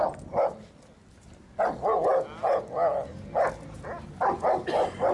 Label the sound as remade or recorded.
recorded